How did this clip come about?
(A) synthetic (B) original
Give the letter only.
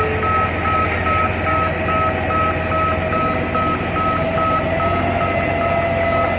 B